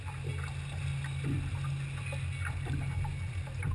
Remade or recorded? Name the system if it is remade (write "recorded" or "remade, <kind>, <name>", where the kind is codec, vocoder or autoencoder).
recorded